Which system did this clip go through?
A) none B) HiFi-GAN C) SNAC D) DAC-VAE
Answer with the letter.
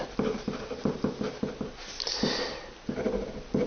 A